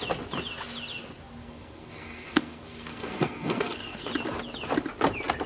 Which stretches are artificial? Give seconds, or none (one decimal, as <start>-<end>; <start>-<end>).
1.4-4.1

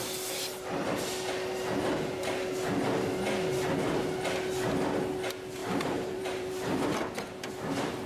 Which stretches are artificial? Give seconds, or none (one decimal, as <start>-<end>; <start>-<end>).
5.6-6.9

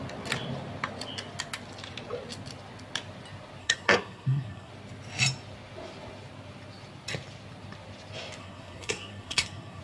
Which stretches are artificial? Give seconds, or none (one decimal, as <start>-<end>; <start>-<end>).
3.6-4.7; 8.4-9.8